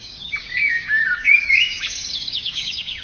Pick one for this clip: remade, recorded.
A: remade